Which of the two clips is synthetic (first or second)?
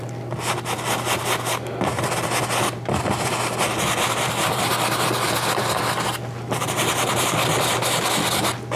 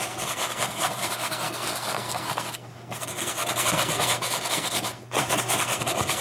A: second